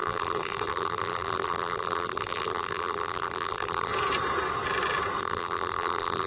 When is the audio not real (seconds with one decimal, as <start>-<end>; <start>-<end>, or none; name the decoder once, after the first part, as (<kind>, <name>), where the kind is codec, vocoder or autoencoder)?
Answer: 0.0-3.9 (vocoder, BigVGAN v2); 5.2-6.3